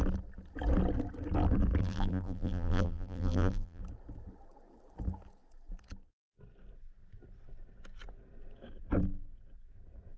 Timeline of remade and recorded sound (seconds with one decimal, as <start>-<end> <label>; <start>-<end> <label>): 0.0-1.8 recorded; 1.8-3.8 remade; 3.8-10.2 recorded